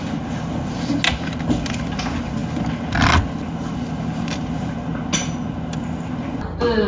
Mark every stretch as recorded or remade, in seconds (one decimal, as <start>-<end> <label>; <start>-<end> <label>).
0.0-6.9 recorded